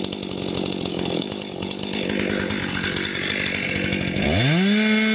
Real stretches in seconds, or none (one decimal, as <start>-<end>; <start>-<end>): 0.0-0.9; 1.8-5.1